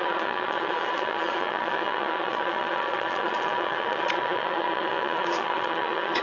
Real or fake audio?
fake